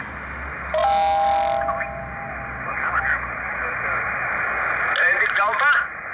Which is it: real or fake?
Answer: real